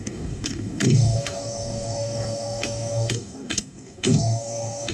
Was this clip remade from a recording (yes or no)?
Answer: yes